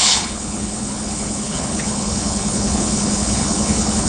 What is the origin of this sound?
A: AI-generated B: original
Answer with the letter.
A